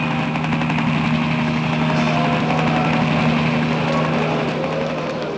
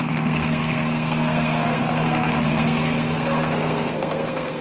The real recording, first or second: first